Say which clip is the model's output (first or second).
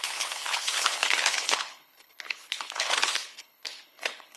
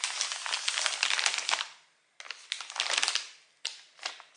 first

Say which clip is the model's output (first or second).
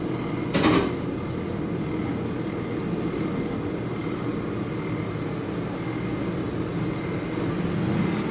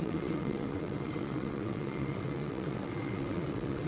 second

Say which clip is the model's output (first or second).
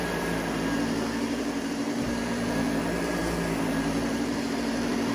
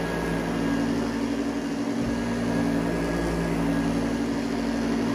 first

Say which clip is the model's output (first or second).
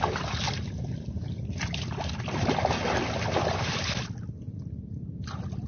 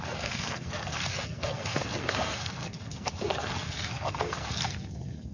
second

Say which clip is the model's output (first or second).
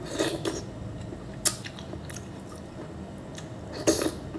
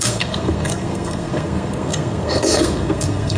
second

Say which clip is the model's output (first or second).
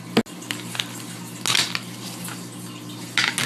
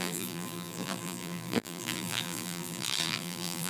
second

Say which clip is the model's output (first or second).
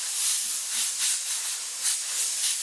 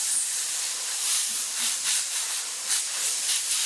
second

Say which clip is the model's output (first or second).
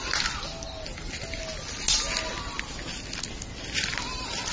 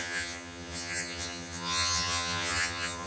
second